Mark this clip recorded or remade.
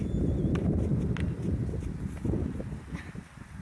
recorded